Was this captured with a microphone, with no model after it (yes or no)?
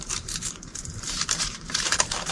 no